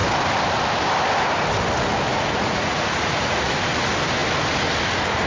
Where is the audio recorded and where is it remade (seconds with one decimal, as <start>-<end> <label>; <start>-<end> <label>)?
0.0-2.1 recorded; 2.1-3.5 remade; 3.5-5.3 recorded